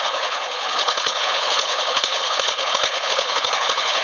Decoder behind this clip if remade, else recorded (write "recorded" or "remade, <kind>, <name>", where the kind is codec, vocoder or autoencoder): remade, codec, HILCodec